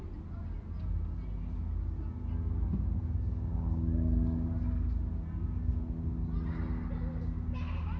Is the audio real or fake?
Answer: real